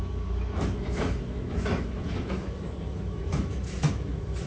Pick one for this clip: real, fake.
fake